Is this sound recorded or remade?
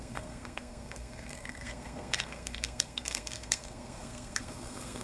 remade